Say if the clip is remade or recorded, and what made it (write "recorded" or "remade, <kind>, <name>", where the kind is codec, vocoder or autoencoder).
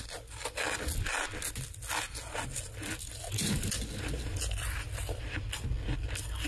recorded